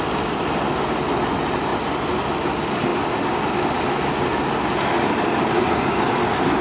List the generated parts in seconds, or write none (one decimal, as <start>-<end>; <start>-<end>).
none